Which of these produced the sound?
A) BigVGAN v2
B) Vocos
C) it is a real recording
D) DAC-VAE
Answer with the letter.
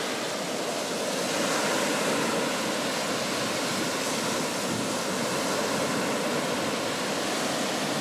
C